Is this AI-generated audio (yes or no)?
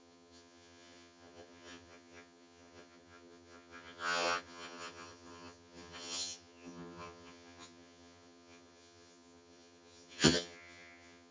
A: yes